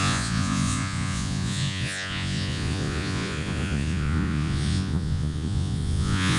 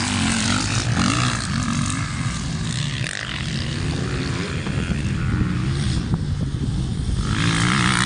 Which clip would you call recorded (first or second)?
second